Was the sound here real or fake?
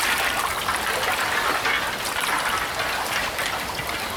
real